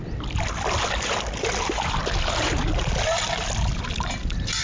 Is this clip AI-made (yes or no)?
no